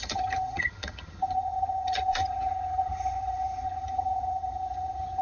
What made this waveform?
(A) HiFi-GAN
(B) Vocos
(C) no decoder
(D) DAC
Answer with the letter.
A